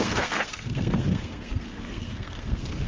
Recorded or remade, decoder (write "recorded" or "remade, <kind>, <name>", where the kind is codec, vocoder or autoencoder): remade, codec, SNAC